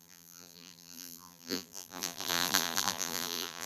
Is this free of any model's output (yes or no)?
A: no